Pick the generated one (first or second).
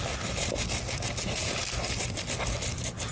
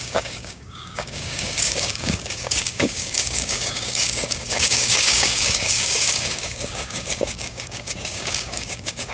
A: second